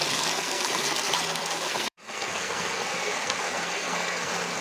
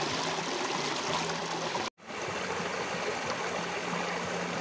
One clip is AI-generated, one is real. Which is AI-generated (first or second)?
first